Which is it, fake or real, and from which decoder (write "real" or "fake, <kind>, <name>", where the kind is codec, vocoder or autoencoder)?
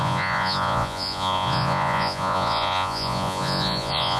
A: fake, vocoder, Vocos